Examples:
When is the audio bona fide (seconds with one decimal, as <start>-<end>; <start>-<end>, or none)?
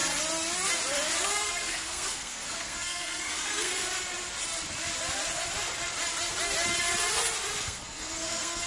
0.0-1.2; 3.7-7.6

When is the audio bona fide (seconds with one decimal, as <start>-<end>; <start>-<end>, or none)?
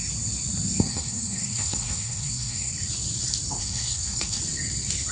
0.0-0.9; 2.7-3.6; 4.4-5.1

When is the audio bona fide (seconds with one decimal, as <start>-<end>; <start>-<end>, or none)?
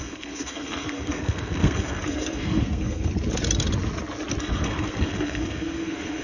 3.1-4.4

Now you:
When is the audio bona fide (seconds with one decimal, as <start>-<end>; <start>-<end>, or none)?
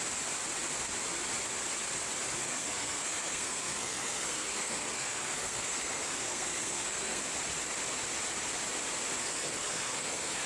0.0-2.4; 7.2-9.2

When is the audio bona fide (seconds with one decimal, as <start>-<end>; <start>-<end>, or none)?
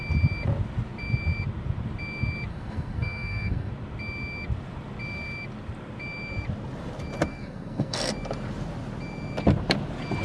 0.0-2.5; 3.7-7.3; 8.1-10.2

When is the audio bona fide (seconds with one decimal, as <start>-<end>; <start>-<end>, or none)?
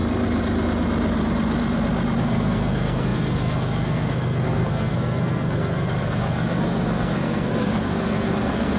0.0-2.2